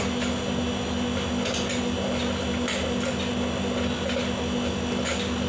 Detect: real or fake real